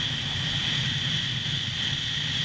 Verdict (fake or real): real